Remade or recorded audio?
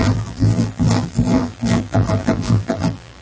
remade